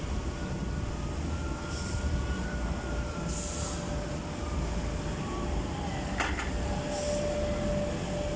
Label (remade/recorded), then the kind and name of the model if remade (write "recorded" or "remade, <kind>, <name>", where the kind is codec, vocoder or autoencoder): recorded